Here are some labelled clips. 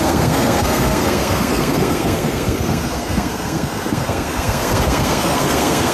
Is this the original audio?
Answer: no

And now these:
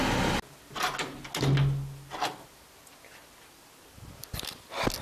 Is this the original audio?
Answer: yes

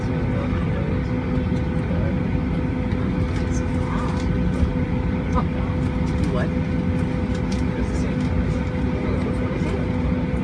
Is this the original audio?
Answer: yes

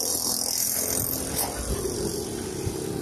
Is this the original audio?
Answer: yes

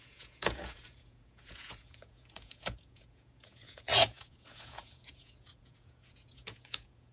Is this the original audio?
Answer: no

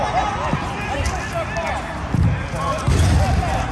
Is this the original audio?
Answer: yes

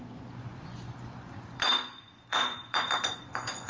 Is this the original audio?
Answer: no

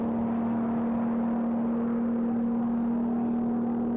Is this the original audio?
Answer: yes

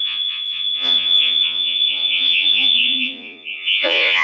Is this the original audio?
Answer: no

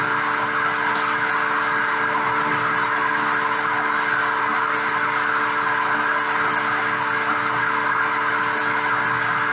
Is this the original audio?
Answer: yes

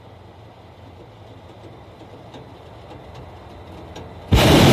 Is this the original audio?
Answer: yes